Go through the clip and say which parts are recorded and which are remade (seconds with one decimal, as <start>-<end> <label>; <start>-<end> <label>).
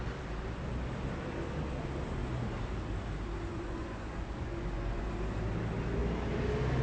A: 0.0-3.5 recorded; 3.5-5.1 remade; 5.1-6.8 recorded